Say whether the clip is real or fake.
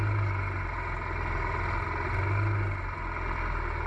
real